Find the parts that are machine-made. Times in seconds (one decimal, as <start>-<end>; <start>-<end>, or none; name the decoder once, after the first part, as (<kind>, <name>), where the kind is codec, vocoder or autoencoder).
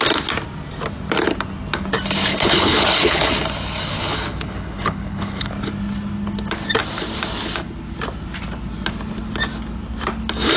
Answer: 2.3-3.3 (codec, HILCodec); 3.9-5.5